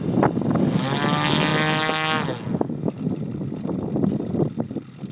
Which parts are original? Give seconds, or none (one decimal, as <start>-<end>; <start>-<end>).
0.0-5.1